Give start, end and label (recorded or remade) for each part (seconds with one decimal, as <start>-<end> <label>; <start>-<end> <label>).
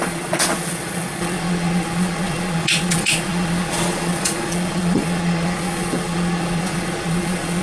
0.0-7.6 remade